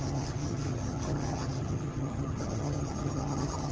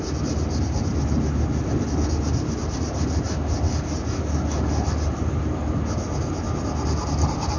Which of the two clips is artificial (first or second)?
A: first